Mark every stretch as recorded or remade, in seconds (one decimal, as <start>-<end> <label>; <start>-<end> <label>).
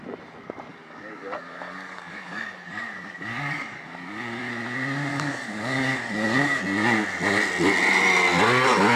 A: 0.0-0.7 recorded; 0.7-4.5 remade; 4.5-5.1 recorded; 5.1-6.6 remade; 6.6-9.0 recorded